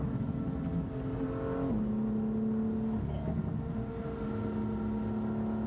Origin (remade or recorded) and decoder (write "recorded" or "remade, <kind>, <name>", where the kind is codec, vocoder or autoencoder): recorded